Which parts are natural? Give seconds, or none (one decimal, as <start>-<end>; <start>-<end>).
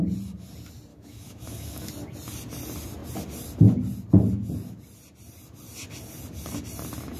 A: 0.0-0.9; 1.9-7.2